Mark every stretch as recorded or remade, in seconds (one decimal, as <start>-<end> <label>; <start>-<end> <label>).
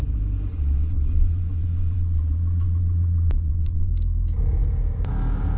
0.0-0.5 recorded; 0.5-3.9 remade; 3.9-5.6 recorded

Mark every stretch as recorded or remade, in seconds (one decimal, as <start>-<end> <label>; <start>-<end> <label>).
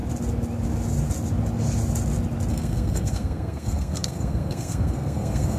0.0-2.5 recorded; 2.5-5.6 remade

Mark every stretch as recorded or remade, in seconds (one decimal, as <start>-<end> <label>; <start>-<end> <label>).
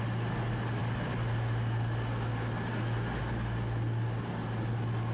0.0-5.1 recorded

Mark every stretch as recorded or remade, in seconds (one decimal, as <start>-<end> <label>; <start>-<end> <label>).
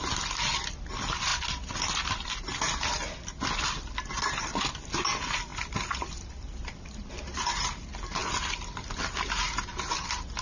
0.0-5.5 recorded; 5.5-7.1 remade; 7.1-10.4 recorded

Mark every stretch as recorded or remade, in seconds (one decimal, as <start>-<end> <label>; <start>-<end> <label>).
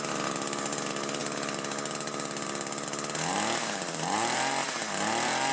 0.0-5.5 recorded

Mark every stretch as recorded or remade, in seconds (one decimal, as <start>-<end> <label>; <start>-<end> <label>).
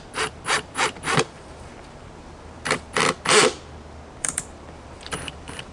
0.0-3.0 remade; 3.0-4.2 recorded; 4.2-5.7 remade